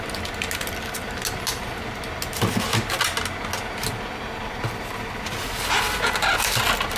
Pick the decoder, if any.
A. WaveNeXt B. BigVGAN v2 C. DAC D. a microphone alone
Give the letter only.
D